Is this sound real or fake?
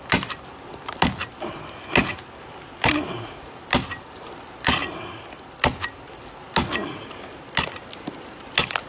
real